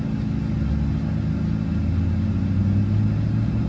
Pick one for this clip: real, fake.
real